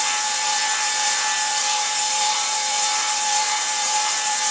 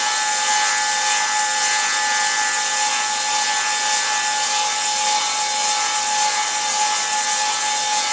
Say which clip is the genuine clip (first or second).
second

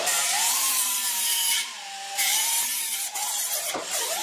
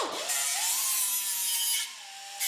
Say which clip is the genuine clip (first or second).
second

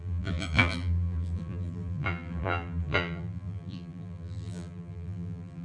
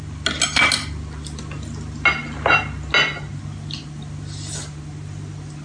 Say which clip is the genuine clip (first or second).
second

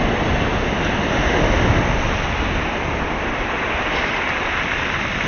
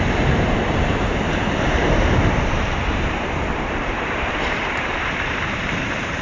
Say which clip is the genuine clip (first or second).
first